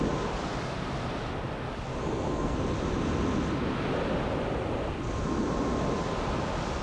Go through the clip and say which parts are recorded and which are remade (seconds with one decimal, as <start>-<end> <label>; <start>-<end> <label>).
0.0-2.0 recorded; 2.0-2.6 remade; 2.6-6.8 recorded